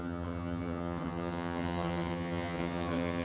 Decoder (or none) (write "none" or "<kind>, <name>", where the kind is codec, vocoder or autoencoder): vocoder, HiFi-GAN